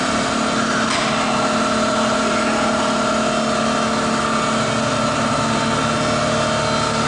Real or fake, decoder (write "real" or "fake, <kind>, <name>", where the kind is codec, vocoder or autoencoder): real